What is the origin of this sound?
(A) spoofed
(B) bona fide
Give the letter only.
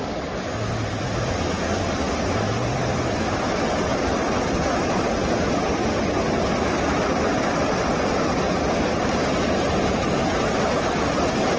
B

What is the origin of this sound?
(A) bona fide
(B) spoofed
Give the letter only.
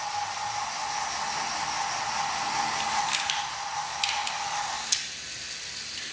A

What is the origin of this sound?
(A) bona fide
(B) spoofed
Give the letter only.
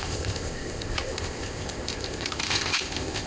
B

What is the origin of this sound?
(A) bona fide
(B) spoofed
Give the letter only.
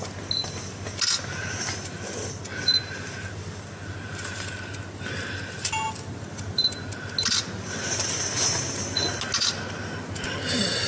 A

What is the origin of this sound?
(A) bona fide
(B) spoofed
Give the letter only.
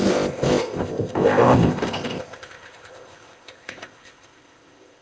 B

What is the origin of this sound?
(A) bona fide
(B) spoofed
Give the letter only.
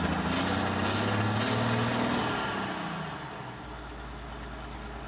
A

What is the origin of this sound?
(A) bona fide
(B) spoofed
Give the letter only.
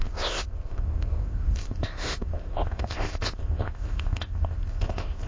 B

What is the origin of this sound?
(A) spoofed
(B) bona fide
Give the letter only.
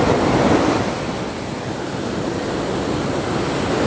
B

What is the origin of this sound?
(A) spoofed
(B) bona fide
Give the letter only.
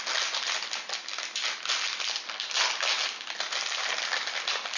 B